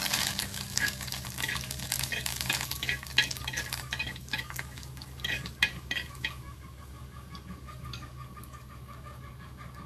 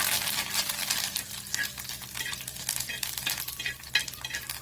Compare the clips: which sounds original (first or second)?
second